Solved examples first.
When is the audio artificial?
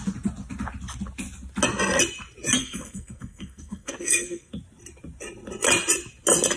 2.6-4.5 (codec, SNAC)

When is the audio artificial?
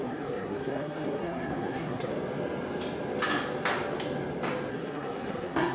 0.0-2.1 (codec, SNAC); 4.7-5.7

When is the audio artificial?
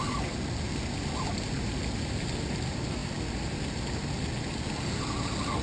none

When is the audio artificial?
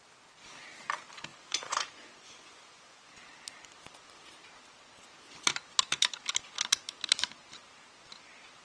1.3-3.1 (vocoder, Vocos)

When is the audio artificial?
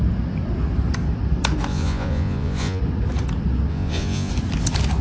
1.7-2.8 (vocoder, Vocos); 3.7-4.3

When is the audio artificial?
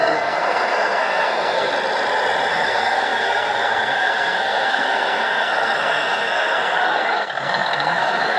0.0-1.7 (codec, SNAC); 2.5-8.4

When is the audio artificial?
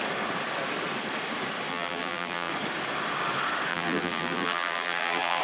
1.7-2.5 (vocoder, BigVGAN v2); 3.7-5.4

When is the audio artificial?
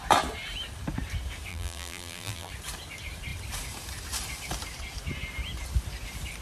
1.5-2.5 (vocoder, BigVGAN v2)